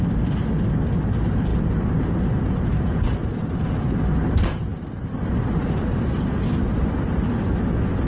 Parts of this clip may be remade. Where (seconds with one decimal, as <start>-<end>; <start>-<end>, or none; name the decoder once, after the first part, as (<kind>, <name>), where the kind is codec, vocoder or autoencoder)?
1.5-3.0 (vocoder, BigVGAN v2); 4.7-5.8